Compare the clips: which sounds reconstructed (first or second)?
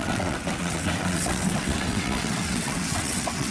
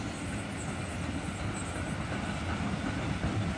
first